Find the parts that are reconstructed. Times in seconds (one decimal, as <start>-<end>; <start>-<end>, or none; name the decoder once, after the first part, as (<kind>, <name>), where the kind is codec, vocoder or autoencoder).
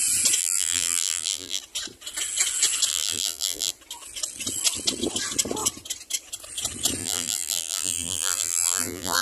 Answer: 0.4-1.6 (vocoder, BigVGAN v2); 2.9-3.7; 7.0-9.2